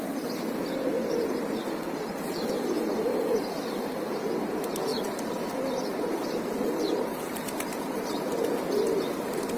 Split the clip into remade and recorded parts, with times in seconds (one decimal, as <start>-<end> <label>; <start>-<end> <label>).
0.0-4.9 recorded; 4.9-8.3 remade; 8.3-9.6 recorded